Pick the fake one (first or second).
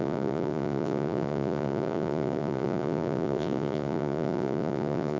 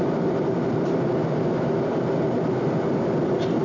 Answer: first